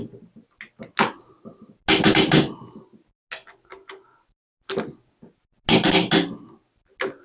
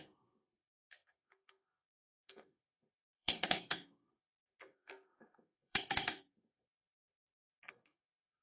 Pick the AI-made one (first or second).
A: second